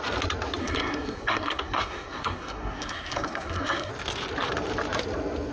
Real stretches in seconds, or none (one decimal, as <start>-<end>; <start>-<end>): 0.0-0.6; 3.9-5.5